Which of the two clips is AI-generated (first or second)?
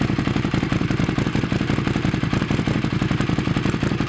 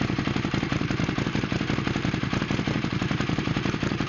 second